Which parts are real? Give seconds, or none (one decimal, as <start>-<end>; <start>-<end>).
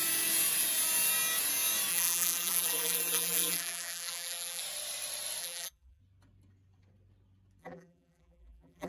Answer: 0.0-1.9; 4.6-5.4; 6.0-7.6